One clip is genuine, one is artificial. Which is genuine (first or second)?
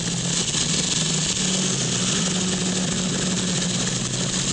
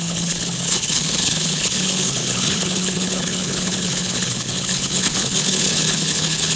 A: first